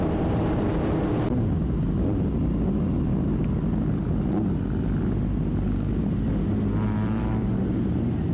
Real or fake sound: real